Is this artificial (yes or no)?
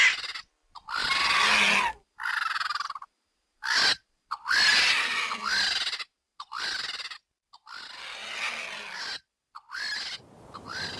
no